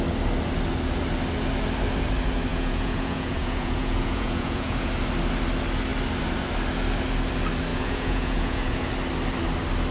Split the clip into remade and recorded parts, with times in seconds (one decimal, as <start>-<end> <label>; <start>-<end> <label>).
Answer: 0.0-2.5 recorded; 2.5-4.9 remade; 4.9-7.7 recorded; 7.7-8.9 remade; 8.9-9.9 recorded